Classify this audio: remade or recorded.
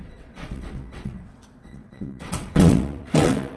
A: remade